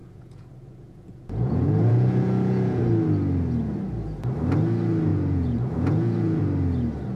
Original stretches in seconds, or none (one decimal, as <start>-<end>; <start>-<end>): 2.8-5.1; 6.4-7.2